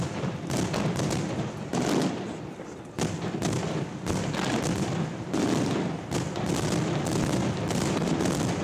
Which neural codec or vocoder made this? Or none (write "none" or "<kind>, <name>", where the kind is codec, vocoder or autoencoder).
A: none